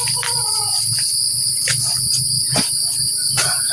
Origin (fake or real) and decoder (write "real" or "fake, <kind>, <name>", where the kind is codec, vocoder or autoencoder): real